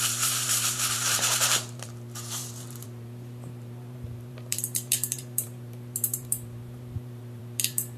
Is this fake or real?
fake